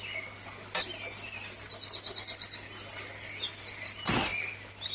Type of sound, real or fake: real